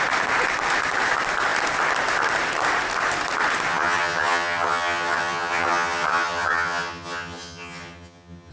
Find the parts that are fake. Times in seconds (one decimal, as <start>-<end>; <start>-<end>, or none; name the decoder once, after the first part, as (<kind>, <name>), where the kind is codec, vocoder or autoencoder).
3.7-8.5 (vocoder, HiFi-GAN)